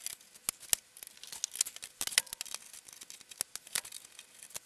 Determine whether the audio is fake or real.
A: real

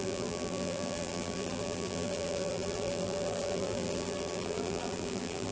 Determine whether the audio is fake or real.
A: fake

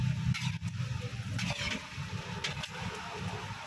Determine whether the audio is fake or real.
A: real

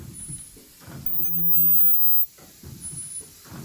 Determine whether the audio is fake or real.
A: real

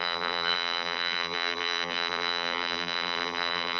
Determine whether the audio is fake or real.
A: fake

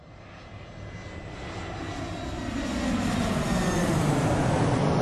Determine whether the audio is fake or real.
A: real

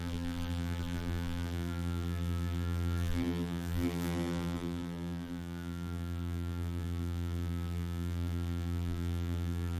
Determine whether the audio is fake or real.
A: fake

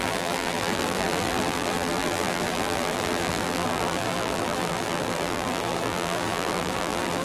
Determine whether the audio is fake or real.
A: fake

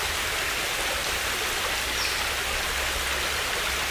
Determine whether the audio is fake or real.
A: real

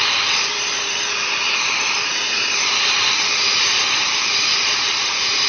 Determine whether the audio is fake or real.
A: fake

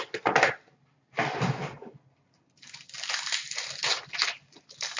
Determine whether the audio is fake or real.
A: real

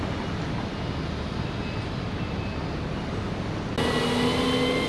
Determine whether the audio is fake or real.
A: real